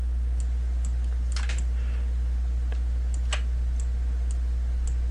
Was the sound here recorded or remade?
recorded